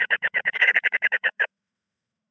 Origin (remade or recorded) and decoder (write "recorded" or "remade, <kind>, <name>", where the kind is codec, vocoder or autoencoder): remade, autoencoder, DAC-VAE